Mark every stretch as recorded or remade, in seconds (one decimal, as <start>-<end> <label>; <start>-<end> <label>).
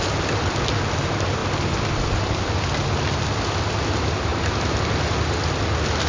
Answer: 0.0-6.1 recorded